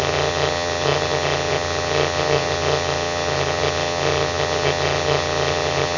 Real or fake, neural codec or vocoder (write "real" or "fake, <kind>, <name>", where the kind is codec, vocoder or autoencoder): fake, vocoder, HiFi-GAN